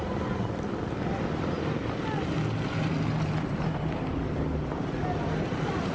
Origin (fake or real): real